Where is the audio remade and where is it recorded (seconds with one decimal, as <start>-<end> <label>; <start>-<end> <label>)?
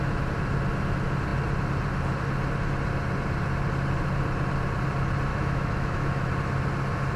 0.0-5.3 recorded; 5.3-6.3 remade; 6.3-7.2 recorded